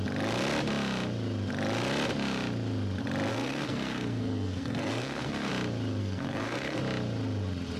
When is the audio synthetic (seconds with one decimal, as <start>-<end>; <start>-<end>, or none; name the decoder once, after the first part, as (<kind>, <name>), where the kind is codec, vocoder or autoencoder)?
3.3-5.5 (codec, SNAC); 6.0-6.8